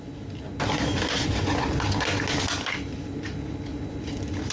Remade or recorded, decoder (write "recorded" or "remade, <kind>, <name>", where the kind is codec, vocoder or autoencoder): recorded